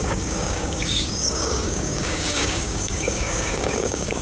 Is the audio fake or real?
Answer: fake